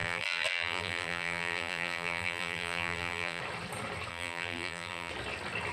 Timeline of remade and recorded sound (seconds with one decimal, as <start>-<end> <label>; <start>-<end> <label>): 0.0-3.4 remade; 3.4-4.1 recorded; 4.1-5.1 remade; 5.1-5.7 recorded